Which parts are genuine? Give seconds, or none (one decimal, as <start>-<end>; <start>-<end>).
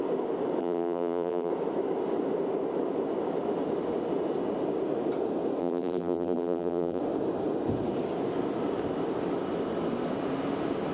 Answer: 0.0-0.6; 1.5-5.6; 7.0-10.9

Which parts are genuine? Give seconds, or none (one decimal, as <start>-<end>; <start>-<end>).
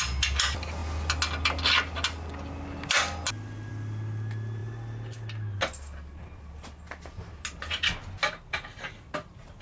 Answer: 0.0-9.6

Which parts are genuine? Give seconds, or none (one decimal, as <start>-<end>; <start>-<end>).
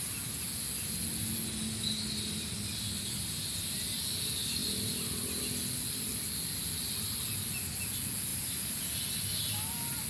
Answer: 0.0-4.6; 5.4-8.3; 9.0-10.1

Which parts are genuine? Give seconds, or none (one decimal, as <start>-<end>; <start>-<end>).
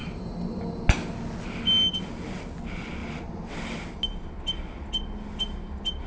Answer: 0.6-3.0; 3.5-6.1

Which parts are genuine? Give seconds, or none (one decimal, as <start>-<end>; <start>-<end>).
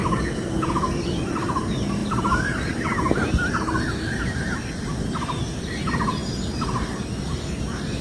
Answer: 0.6-2.0; 3.1-8.0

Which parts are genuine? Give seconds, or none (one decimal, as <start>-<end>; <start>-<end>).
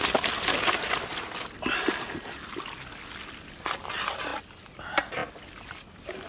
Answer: 0.0-6.3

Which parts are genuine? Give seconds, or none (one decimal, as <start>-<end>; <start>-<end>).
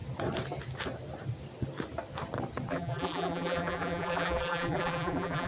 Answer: 0.0-2.7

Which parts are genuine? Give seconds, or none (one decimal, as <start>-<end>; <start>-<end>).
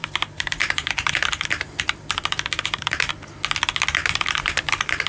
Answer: 3.1-4.0